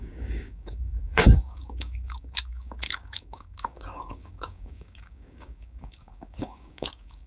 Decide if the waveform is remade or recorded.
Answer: remade